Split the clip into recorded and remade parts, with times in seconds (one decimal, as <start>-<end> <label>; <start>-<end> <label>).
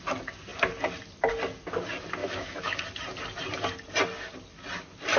0.0-2.2 recorded; 2.2-2.8 remade; 2.8-5.2 recorded